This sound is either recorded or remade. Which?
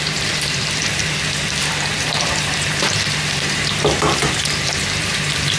remade